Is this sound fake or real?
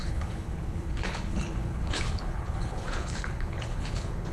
fake